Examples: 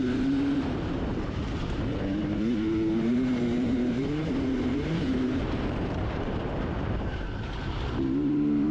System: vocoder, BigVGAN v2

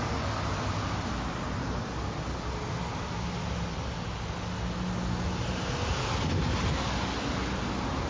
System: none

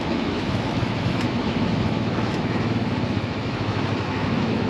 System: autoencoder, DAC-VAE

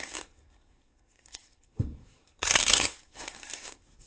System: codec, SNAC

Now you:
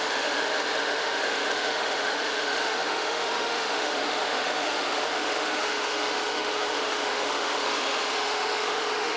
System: autoencoder, DAC-VAE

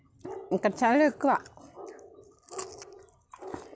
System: none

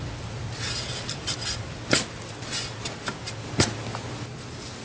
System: none